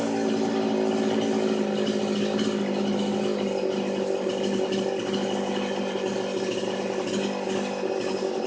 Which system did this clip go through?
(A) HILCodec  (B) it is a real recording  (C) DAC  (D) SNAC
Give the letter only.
B